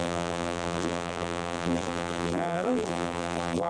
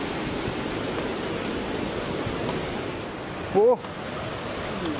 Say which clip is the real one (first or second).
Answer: second